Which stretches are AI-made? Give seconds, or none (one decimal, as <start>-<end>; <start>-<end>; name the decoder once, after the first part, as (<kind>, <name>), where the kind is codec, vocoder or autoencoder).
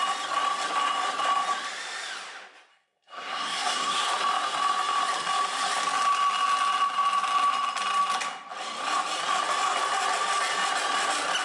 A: 2.7-4.1 (codec, SNAC)